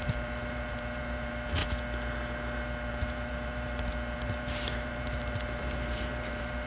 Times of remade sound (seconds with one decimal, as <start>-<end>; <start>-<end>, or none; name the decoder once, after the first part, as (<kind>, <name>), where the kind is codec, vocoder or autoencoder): 0.0-1.6 (vocoder, BigVGAN v2); 2.9-6.7